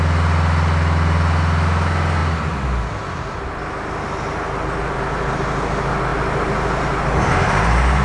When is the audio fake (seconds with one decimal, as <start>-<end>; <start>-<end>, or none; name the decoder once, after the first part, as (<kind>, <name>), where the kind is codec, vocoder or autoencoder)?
none